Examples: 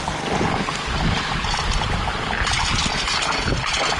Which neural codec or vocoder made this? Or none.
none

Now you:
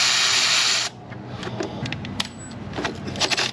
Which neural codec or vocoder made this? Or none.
none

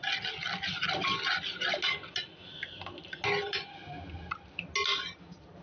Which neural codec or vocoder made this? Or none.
none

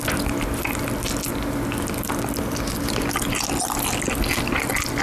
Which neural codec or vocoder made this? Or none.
none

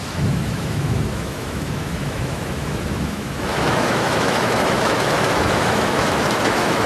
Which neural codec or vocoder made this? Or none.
autoencoder, DAC-VAE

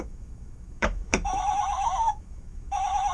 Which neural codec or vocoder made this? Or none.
autoencoder, DAC-VAE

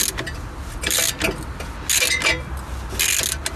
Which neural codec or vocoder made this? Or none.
none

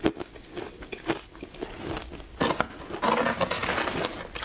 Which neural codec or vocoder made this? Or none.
none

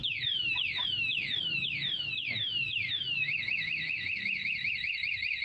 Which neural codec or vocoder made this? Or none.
autoencoder, DAC-VAE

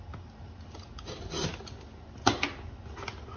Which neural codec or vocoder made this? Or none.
none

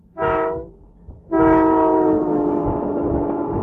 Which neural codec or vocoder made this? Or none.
autoencoder, DAC-VAE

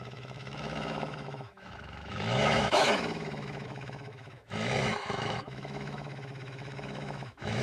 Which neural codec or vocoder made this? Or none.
autoencoder, DAC-VAE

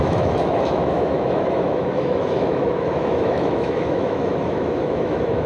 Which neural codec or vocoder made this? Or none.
autoencoder, DAC-VAE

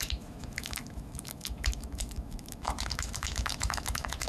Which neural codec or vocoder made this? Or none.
autoencoder, DAC-VAE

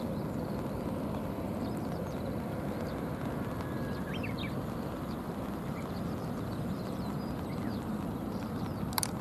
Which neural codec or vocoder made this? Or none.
none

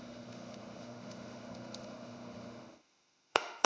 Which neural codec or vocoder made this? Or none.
autoencoder, DAC-VAE